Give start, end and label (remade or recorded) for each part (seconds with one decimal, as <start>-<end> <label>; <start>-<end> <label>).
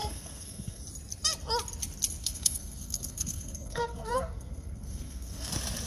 0.0-0.8 remade; 0.8-2.2 recorded; 2.2-5.5 remade; 5.5-5.9 recorded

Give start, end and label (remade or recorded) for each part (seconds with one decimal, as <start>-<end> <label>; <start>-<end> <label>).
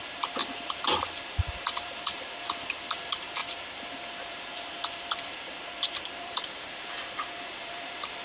0.0-8.2 remade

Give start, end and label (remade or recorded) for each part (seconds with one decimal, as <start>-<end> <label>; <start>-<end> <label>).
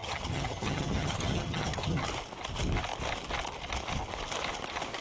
0.0-2.1 remade; 2.1-5.0 recorded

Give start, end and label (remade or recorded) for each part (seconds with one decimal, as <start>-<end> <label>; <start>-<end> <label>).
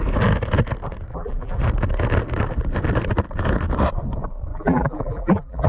0.0-1.1 recorded; 1.1-1.6 remade; 1.6-4.5 recorded; 4.5-5.7 remade